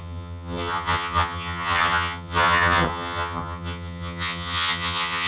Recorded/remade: remade